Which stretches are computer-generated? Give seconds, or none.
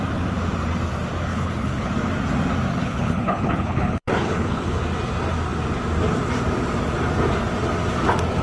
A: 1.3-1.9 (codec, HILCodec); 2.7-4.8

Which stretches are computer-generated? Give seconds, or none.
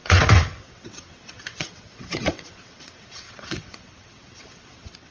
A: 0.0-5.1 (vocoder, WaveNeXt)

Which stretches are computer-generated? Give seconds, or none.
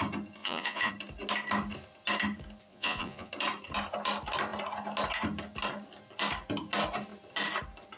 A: 0.4-0.9 (vocoder, Vocos); 2.7-3.3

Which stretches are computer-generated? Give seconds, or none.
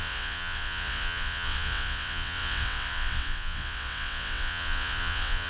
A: 0.0-5.5 (vocoder, WaveNeXt)